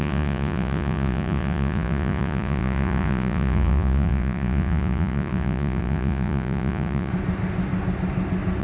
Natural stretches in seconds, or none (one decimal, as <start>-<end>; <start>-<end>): 7.1-8.6